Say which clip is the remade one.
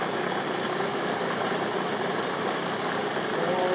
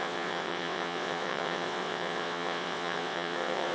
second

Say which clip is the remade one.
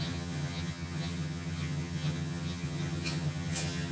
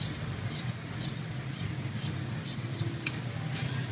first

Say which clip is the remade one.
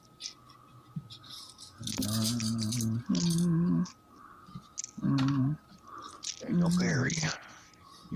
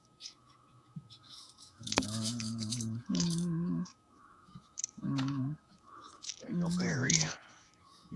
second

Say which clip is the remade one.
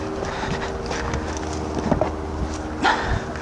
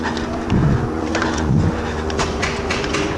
second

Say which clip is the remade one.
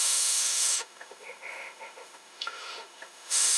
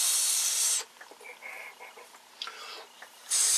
first